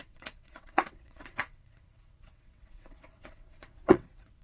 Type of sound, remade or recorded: remade